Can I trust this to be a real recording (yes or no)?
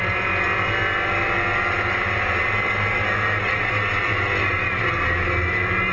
yes